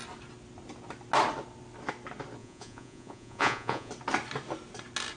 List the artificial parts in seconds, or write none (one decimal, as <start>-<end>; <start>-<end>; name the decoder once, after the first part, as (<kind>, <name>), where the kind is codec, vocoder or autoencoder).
2.4-3.9 (vocoder, Vocos)